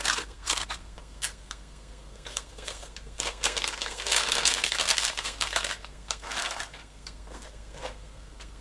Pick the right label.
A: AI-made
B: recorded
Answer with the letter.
A